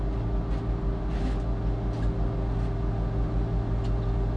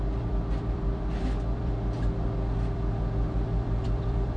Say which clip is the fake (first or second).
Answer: second